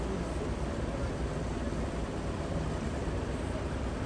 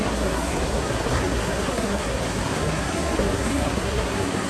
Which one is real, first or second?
first